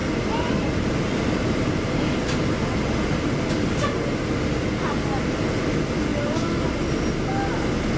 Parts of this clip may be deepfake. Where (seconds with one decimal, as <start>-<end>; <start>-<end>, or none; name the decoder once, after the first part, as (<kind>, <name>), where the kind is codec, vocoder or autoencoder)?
none

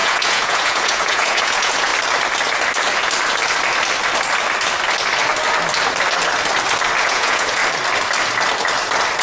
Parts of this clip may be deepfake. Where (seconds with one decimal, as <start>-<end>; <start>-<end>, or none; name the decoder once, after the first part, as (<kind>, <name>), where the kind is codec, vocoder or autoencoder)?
0.0-1.9 (vocoder, Vocos); 7.0-7.6

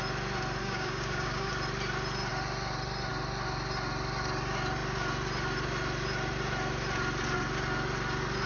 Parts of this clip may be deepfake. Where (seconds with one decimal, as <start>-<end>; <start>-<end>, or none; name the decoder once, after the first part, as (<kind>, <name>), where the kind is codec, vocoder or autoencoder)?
0.6-1.5 (codec, DAC)

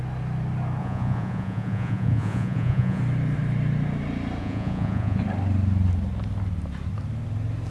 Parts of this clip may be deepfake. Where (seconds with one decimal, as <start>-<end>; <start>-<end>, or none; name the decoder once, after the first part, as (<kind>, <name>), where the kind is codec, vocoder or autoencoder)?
0.8-3.0 (vocoder, Vocos); 4.4-5.2

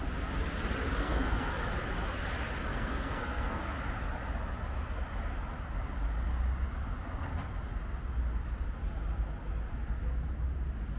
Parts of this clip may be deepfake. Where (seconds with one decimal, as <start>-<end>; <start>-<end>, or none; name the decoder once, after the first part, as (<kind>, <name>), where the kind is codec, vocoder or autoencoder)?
1.0-1.6 (codec, SNAC); 2.7-3.6

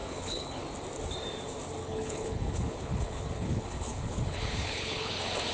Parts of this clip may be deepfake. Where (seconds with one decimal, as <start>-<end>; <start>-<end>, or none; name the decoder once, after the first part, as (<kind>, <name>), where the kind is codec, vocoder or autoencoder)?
0.0-0.6 (codec, HILCodec); 1.8-5.1

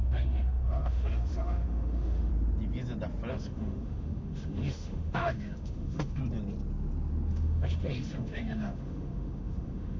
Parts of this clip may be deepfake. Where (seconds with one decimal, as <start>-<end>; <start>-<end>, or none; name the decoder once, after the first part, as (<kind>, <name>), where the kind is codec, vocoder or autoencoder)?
0.0-2.3 (autoencoder, DAC-VAE); 3.3-6.2; 7.3-10.0